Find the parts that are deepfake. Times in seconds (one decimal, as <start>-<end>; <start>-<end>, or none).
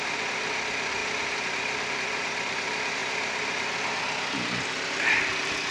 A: none